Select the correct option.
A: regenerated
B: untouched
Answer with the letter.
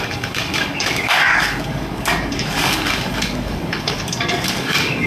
A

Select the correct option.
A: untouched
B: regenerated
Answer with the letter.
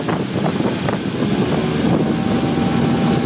A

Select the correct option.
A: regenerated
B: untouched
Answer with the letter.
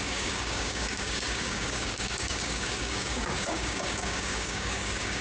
A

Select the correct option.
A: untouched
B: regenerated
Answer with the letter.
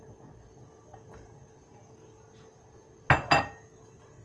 A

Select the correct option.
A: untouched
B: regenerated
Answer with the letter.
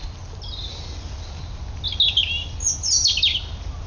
A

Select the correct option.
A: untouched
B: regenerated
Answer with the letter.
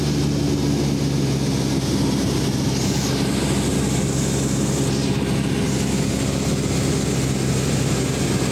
A